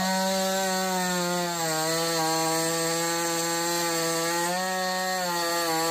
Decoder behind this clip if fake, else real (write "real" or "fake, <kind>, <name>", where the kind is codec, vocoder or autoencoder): real